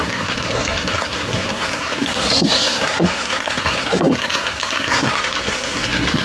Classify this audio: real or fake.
fake